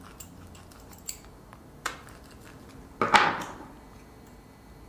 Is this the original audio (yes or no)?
yes